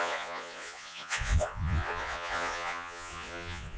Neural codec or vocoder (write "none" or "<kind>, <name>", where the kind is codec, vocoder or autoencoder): vocoder, Vocos